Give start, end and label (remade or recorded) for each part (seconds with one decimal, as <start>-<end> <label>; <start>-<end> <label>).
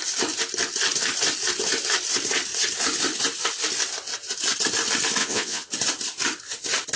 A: 0.0-5.2 recorded; 5.2-5.7 remade; 5.7-7.0 recorded